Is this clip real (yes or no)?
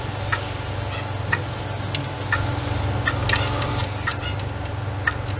yes